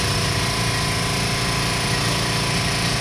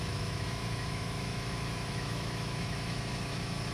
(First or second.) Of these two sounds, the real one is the first